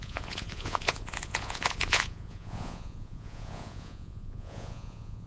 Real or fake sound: fake